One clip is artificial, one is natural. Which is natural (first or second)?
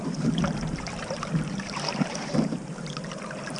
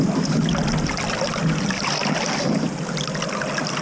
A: second